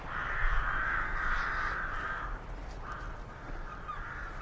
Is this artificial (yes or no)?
no